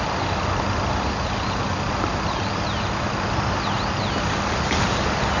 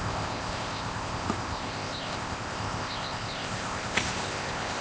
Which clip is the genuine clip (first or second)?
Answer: first